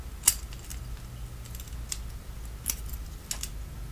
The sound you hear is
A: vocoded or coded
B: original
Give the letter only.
B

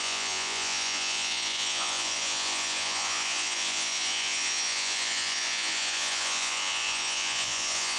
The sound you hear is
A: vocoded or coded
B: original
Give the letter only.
A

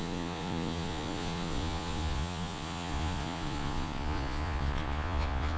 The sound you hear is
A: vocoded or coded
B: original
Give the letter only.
A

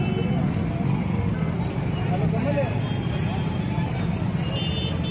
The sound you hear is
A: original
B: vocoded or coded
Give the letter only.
A